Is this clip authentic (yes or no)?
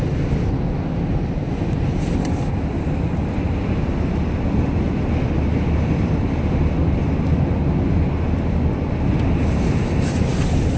yes